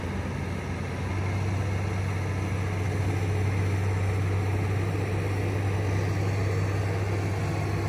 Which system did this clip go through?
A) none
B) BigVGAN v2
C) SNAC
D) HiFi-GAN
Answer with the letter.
A